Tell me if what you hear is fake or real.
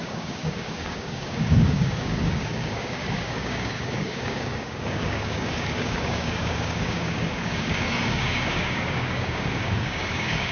fake